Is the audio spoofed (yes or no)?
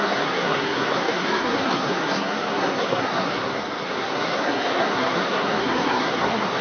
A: yes